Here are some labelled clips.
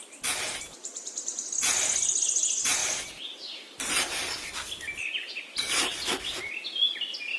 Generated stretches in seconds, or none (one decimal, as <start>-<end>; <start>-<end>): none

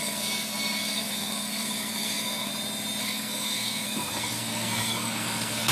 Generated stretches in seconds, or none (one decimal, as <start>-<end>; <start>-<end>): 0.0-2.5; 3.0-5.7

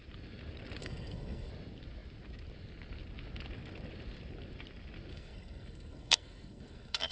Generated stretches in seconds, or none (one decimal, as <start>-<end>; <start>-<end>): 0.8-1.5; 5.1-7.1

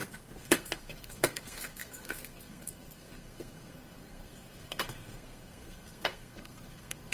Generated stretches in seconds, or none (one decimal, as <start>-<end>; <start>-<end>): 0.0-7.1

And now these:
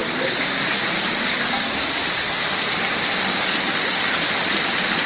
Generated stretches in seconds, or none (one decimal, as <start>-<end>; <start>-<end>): none

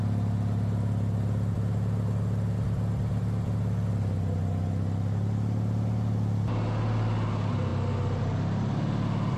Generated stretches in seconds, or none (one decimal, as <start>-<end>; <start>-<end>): none

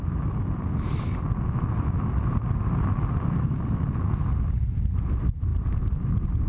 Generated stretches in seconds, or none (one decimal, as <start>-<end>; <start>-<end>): none

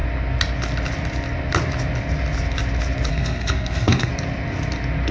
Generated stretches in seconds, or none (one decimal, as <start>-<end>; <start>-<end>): 3.1-4.1